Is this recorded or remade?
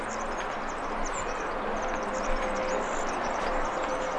recorded